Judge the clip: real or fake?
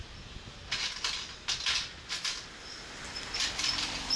real